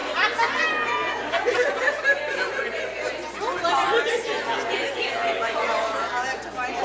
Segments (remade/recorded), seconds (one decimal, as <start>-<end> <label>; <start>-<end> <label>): 0.0-6.8 recorded